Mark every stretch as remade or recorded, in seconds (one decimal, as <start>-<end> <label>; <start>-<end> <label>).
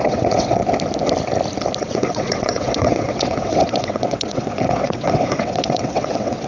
0.0-0.6 remade; 0.6-1.8 recorded; 1.8-6.5 remade